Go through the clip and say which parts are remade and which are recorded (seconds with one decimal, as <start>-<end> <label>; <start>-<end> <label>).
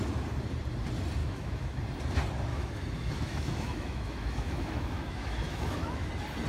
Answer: 0.0-1.2 recorded; 1.2-1.8 remade; 1.8-2.5 recorded; 2.5-6.1 remade; 6.1-6.5 recorded